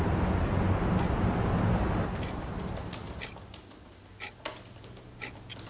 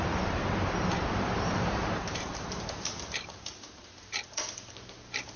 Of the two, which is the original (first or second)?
first